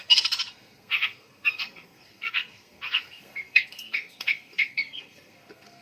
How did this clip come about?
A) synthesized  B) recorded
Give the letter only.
A